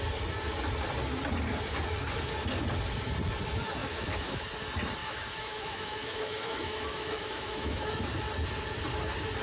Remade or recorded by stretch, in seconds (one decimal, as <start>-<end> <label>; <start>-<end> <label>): 0.0-3.8 recorded; 3.8-4.4 remade; 4.4-5.0 recorded; 5.0-7.8 remade; 7.8-9.4 recorded